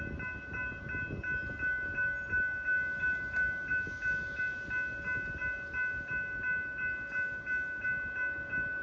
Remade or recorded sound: recorded